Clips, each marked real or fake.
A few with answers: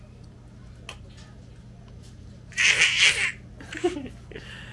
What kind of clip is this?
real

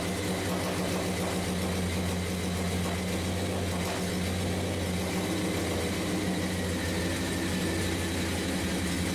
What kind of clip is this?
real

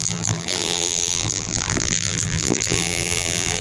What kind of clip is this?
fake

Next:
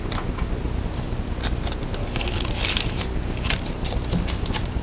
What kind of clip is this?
real